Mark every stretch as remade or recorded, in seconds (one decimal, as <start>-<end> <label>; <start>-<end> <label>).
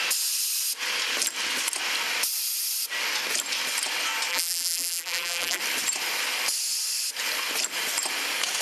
0.0-4.3 recorded; 4.3-5.6 remade; 5.6-8.6 recorded